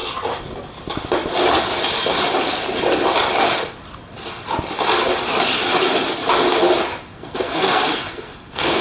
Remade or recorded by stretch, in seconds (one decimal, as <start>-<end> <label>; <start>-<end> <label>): 0.0-7.0 recorded; 7.0-8.8 remade